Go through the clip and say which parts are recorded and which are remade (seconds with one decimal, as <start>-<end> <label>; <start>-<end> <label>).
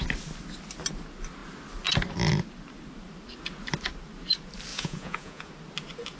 0.0-4.7 recorded; 4.7-5.5 remade; 5.5-6.2 recorded